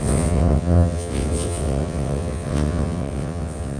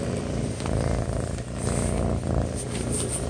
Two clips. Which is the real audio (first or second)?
second